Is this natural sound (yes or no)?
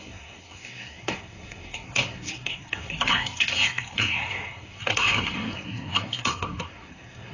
no